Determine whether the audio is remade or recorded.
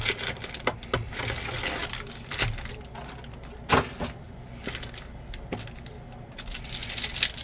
recorded